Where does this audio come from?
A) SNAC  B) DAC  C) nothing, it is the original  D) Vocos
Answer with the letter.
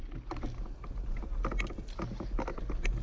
C